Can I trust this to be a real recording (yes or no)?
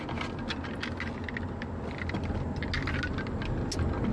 yes